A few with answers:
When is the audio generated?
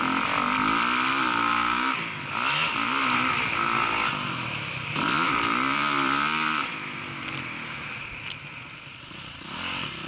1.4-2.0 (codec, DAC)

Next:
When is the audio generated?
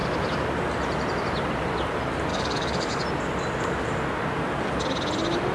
2.3-3.0 (codec, DAC)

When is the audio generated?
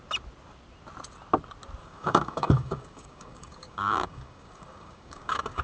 1.8-5.6 (codec, DAC)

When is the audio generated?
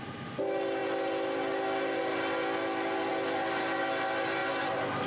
none